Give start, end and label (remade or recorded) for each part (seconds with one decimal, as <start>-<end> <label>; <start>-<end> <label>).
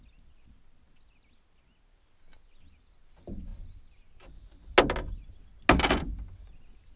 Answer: 0.0-7.0 recorded